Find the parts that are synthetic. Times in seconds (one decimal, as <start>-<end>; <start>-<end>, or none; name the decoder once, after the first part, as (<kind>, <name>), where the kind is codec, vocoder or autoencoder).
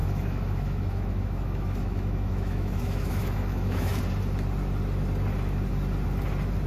0.0-4.0 (autoencoder, DAC-VAE)